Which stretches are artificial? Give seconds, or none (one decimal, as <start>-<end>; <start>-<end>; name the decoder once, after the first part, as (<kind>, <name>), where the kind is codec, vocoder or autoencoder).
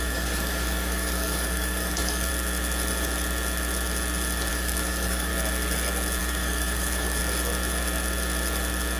0.0-2.3 (codec, DAC); 4.5-5.3; 6.2-7.2